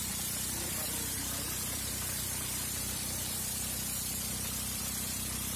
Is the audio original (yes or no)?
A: no